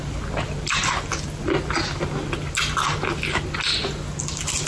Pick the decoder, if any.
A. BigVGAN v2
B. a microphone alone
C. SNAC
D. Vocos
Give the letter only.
B